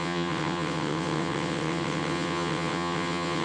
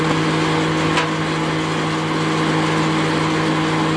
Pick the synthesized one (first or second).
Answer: first